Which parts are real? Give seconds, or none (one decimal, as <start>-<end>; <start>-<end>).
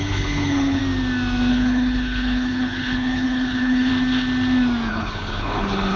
0.8-1.5; 3.9-4.9